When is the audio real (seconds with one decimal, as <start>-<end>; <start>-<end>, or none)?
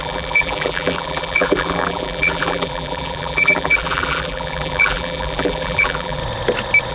6.2-6.9